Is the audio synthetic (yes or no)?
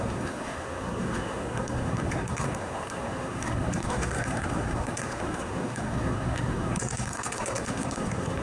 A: yes